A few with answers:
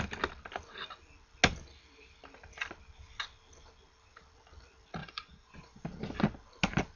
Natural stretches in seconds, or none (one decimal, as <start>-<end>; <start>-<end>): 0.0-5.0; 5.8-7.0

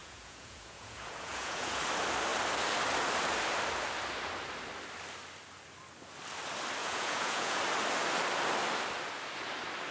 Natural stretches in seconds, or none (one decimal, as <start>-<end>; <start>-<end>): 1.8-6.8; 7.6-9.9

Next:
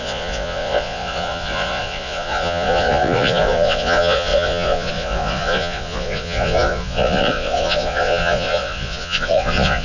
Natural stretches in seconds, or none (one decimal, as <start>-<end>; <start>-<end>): none